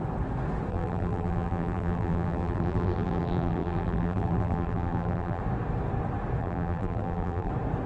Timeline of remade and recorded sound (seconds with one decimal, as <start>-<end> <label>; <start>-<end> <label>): 0.0-0.7 recorded; 0.7-5.4 remade; 5.4-6.4 recorded; 6.4-7.5 remade; 7.5-7.9 recorded

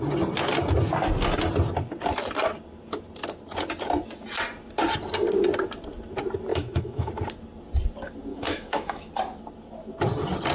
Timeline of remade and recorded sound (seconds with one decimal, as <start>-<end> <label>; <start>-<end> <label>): 0.0-6.5 recorded; 6.5-7.1 remade; 7.1-8.3 recorded; 8.3-9.1 remade; 9.1-10.5 recorded

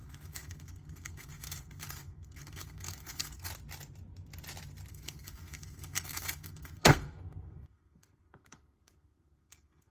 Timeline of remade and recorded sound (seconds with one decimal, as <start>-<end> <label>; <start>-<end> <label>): 0.0-3.5 remade; 3.5-4.9 recorded; 4.9-9.9 remade

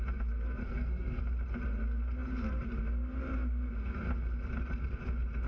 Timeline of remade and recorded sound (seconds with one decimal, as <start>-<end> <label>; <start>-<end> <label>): 0.0-0.6 recorded; 0.6-1.2 remade; 1.2-5.5 recorded

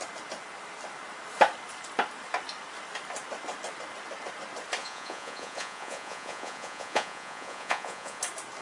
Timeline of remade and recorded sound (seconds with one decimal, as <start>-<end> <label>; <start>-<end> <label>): 0.0-4.8 recorded; 4.8-8.2 remade; 8.2-8.6 recorded

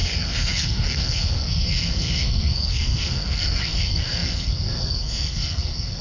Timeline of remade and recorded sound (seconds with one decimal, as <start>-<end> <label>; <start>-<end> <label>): 0.0-6.0 remade

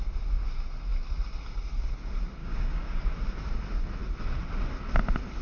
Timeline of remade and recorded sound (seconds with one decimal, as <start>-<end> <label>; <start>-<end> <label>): 0.0-2.4 recorded; 2.4-3.0 remade; 3.0-5.4 recorded

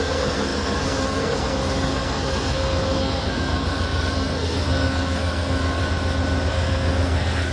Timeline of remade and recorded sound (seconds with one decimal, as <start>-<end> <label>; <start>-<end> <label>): 0.0-5.8 remade; 5.8-6.5 recorded; 6.5-7.5 remade